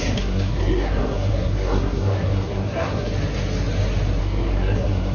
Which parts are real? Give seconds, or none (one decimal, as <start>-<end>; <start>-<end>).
3.1-4.2